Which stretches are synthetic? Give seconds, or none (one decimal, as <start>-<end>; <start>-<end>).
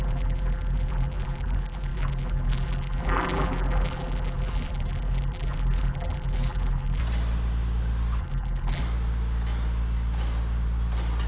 0.0-7.0; 8.2-8.8